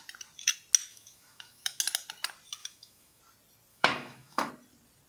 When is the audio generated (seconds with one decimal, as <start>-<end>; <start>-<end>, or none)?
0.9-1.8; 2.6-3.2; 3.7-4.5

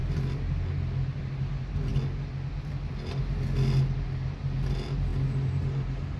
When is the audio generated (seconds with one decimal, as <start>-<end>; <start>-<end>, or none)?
none

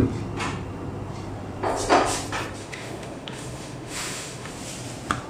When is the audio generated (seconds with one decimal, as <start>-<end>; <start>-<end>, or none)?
2.6-4.5